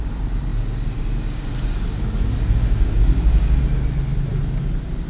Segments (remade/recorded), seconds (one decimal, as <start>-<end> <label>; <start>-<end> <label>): 0.0-5.1 recorded